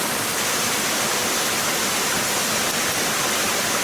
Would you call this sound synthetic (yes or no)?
yes